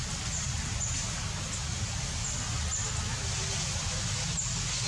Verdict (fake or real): real